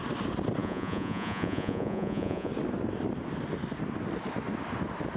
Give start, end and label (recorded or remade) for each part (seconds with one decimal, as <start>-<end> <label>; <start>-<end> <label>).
0.0-0.6 recorded; 0.6-2.5 remade; 2.5-5.2 recorded